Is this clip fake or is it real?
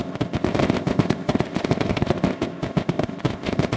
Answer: fake